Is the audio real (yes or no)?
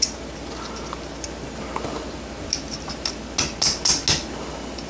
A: yes